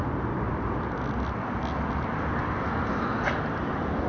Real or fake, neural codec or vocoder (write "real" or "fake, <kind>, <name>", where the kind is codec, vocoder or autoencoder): real